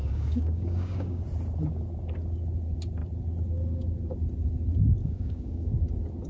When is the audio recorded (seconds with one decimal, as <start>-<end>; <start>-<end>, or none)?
1.2-5.0; 5.7-6.3

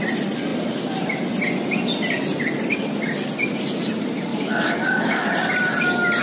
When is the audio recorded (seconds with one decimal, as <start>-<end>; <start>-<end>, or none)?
0.0-4.3; 5.3-6.2